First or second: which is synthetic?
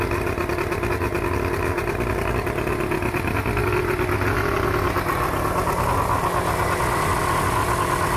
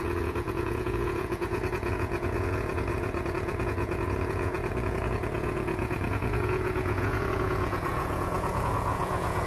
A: second